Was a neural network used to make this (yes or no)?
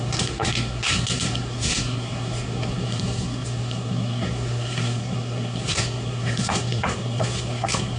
yes